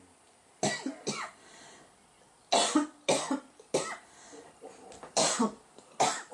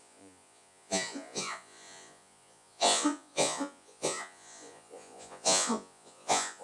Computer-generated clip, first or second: second